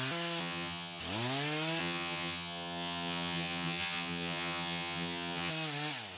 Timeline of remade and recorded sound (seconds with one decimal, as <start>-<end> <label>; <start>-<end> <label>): 0.0-0.4 recorded; 0.4-1.0 remade; 1.0-1.8 recorded; 1.8-5.5 remade; 5.5-6.2 recorded